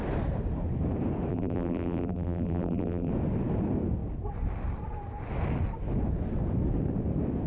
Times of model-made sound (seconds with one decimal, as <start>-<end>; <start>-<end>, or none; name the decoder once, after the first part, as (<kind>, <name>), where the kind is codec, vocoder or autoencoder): 1.3-3.1 (vocoder, BigVGAN v2)